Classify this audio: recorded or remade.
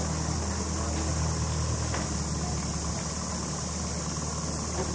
recorded